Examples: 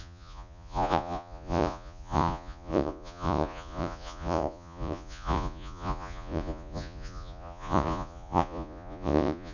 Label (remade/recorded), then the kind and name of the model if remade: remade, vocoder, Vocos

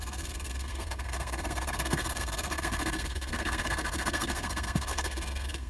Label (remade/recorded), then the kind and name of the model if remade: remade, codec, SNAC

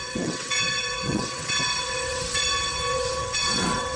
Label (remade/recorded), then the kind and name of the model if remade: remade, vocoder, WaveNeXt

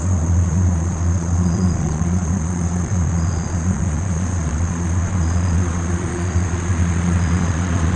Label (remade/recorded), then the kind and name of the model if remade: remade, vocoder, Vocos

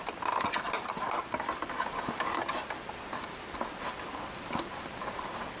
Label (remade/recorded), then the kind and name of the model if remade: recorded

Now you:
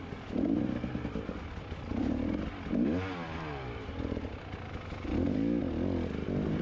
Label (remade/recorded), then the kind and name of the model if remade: recorded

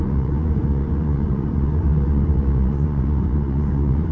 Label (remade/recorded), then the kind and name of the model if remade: remade, vocoder, Vocos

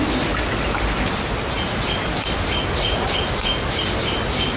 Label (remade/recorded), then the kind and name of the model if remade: recorded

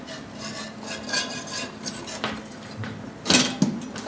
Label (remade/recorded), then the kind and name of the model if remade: recorded